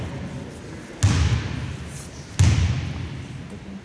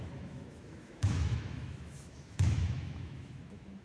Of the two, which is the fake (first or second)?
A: second